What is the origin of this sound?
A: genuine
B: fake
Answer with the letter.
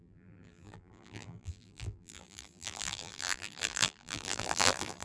B